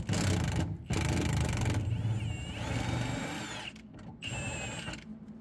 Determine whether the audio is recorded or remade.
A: recorded